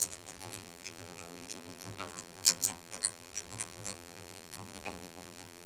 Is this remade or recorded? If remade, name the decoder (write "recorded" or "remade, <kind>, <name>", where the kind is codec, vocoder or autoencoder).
remade, vocoder, BigVGAN v2